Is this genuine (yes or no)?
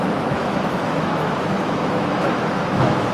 no